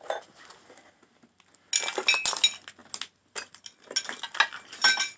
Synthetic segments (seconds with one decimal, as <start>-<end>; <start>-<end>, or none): none